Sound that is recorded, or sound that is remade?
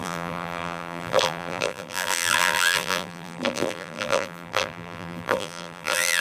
remade